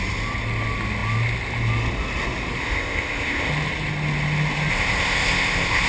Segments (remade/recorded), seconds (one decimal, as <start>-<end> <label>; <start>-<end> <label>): 0.0-2.6 recorded; 2.6-3.5 remade; 3.5-4.7 recorded; 4.7-5.9 remade